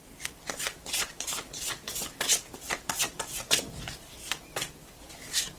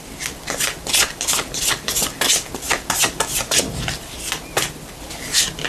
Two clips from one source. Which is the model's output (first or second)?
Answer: first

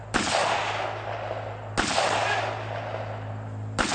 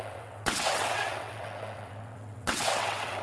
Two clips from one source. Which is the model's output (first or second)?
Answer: second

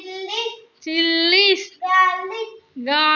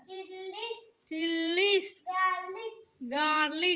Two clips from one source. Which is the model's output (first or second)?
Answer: second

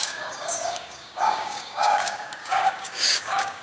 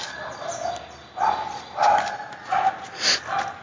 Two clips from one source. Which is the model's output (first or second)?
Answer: first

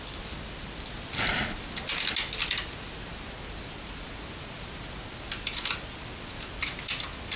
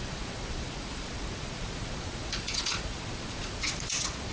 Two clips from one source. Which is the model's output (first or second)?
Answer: second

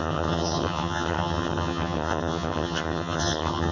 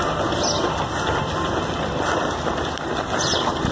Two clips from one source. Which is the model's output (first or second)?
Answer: first